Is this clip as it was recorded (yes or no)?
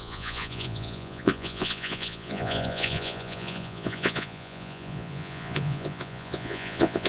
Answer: no